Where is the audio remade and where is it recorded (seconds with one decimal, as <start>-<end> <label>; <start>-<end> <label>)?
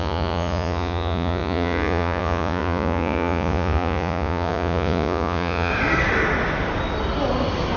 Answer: 0.0-5.7 remade; 5.7-7.8 recorded